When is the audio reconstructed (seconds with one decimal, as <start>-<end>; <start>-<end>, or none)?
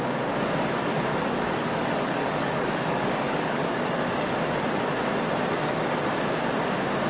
1.1-4.3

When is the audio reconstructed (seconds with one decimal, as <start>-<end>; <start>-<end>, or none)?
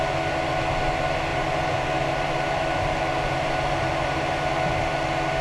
1.3-4.5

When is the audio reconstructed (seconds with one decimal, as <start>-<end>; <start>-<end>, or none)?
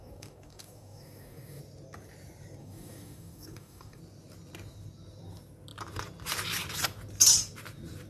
0.0-1.6; 2.6-4.0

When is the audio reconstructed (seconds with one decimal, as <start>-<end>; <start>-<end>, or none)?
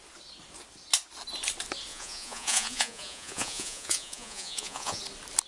1.9-5.0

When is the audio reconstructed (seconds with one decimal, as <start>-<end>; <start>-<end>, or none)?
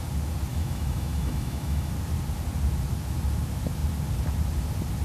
0.5-1.9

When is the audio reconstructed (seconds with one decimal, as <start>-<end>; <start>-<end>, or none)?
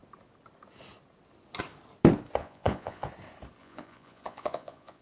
2.4-3.1; 3.6-5.0